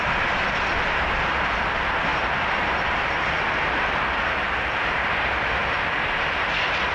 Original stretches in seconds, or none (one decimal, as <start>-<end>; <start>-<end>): 0.0-6.9